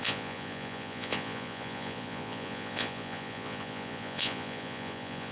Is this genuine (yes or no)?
no